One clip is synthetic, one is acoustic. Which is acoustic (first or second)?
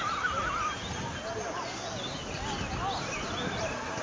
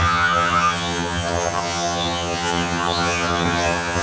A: first